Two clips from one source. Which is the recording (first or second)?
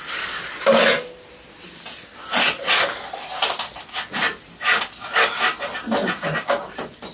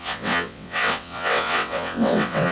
first